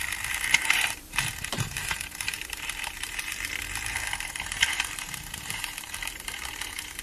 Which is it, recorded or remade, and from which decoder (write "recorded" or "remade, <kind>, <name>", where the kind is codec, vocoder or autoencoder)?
remade, vocoder, BigVGAN v2